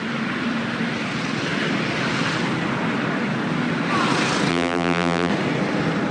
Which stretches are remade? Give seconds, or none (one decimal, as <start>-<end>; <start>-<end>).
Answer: 4.5-5.3